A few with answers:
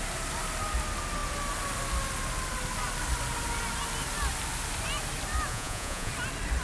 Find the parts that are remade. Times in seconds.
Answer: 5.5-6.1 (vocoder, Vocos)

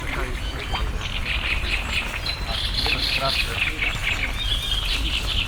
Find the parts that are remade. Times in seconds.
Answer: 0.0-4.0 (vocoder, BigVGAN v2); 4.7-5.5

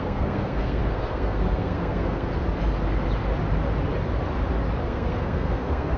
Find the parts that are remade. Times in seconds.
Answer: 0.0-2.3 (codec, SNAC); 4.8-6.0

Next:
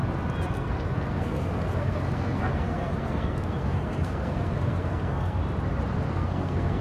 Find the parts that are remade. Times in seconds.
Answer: 0.5-5.4 (codec, SNAC); 6.1-6.8

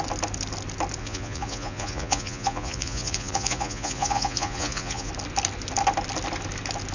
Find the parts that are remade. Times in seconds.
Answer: 1.0-5.1 (vocoder, Vocos)

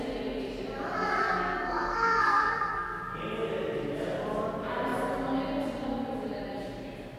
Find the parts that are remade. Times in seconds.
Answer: 1.2-3.0 (codec, SNAC)